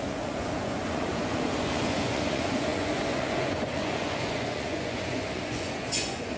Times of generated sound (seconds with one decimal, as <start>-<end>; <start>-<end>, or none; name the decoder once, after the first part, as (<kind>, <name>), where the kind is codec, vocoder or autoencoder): 0.0-6.4 (vocoder, Vocos)